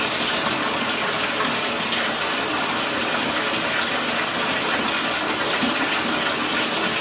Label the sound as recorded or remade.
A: recorded